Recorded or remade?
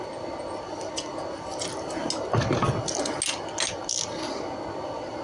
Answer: recorded